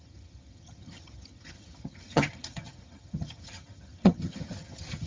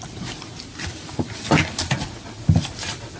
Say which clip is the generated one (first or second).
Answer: first